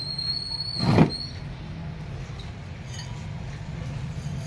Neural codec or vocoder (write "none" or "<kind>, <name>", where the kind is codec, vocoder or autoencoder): none